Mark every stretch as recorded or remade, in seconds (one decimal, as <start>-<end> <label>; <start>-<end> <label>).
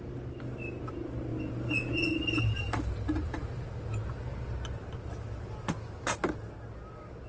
0.0-7.3 recorded